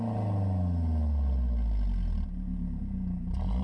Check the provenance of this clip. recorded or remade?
recorded